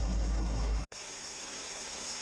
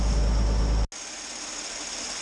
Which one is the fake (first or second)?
first